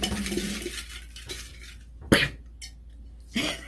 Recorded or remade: recorded